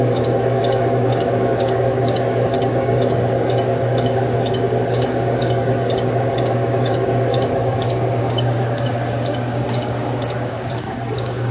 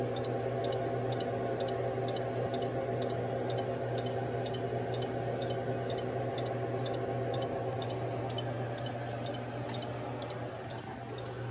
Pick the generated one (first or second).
first